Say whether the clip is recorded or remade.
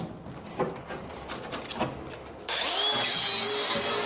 recorded